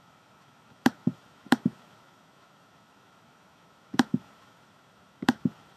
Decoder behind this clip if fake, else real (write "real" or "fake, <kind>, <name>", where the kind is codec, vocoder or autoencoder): fake, autoencoder, DAC-VAE